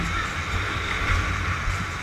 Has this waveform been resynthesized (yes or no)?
no